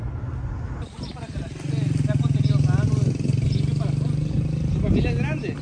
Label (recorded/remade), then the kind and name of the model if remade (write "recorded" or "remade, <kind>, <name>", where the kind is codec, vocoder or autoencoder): recorded